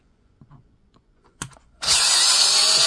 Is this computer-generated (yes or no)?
yes